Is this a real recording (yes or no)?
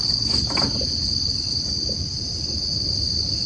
yes